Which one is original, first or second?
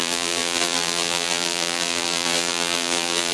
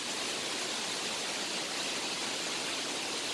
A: second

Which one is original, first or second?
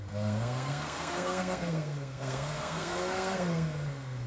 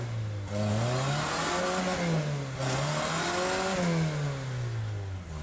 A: second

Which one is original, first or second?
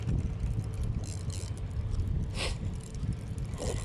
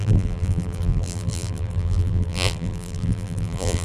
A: first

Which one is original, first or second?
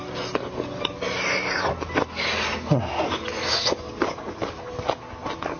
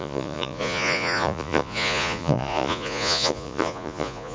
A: first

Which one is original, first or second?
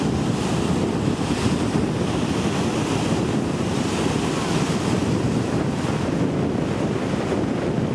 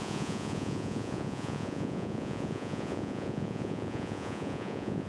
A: first